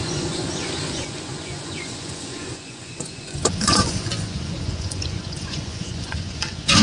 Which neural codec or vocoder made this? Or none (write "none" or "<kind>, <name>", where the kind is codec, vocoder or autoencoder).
vocoder, Vocos